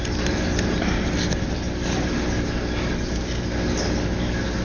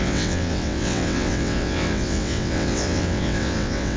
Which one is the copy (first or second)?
second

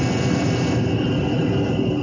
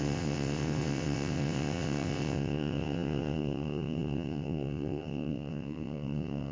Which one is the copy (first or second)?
second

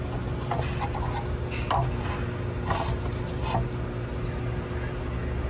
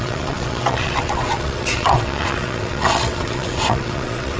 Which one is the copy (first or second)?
second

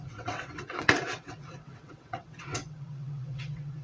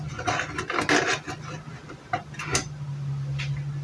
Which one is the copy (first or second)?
first